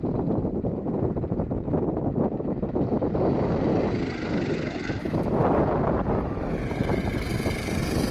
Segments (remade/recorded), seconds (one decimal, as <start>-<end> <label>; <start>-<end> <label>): 0.0-0.7 recorded; 0.7-1.8 remade; 1.8-8.1 recorded